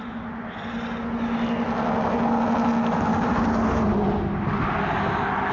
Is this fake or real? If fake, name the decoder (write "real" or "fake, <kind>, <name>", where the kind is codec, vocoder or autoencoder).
real